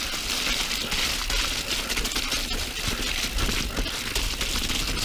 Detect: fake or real real